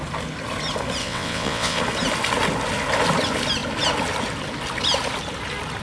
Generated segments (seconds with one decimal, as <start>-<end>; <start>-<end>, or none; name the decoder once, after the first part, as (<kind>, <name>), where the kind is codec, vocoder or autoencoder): 1.0-1.8 (vocoder, WaveNeXt)